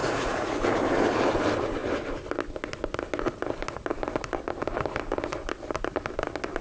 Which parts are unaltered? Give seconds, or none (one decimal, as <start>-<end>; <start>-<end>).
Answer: 0.6-6.6